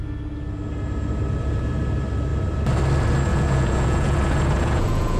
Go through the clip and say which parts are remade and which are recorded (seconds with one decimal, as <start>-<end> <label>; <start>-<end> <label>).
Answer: 0.0-3.3 recorded; 3.3-5.2 remade